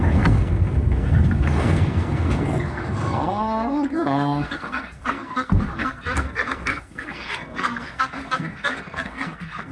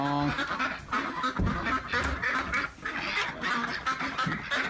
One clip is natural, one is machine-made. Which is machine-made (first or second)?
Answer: first